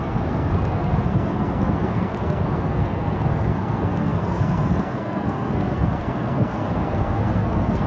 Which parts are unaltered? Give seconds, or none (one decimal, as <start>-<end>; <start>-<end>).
none